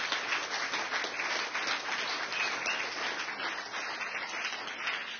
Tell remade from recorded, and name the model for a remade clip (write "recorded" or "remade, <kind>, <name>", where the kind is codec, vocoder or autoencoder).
recorded